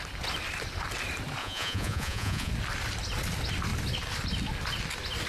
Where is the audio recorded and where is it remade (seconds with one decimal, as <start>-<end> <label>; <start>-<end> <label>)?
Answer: 0.0-1.4 recorded; 1.4-2.5 remade; 2.5-5.3 recorded